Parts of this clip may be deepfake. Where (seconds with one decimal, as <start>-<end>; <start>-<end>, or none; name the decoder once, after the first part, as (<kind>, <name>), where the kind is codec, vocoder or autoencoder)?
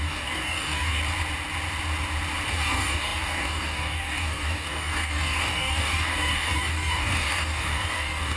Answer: 0.0-1.0 (codec, DAC); 2.5-8.4